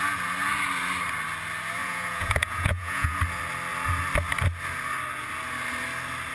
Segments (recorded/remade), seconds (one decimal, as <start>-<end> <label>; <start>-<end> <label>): 0.0-1.8 recorded; 1.8-3.2 remade; 3.2-6.3 recorded